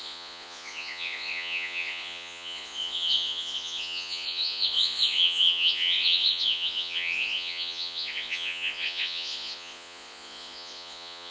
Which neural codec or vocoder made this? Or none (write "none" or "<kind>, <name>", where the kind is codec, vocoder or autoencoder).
vocoder, Vocos